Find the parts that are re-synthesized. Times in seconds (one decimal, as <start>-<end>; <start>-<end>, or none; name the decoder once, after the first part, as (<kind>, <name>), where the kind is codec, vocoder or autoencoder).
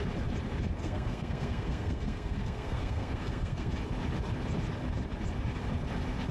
0.8-3.7 (codec, SNAC)